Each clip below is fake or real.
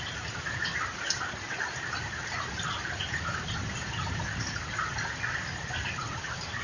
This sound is real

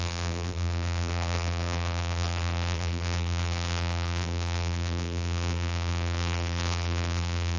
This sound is fake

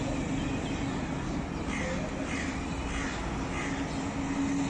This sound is real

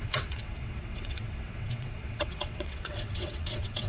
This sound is fake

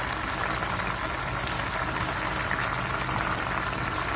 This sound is real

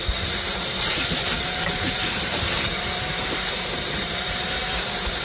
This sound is fake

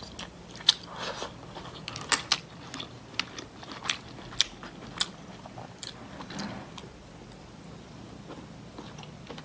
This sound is real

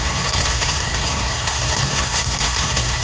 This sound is fake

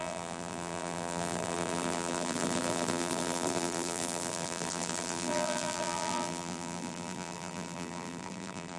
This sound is fake